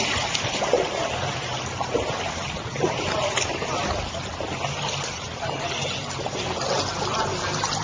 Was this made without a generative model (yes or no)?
yes